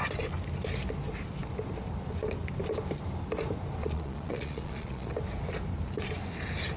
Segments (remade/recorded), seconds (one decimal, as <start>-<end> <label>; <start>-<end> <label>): 0.0-3.8 recorded; 3.8-5.1 remade; 5.1-6.8 recorded